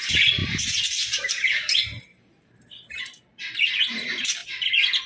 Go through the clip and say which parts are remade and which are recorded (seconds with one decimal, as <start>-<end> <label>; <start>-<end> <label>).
0.0-0.4 recorded; 0.4-3.0 remade; 3.0-5.1 recorded